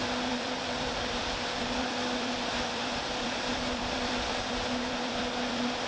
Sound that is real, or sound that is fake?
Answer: fake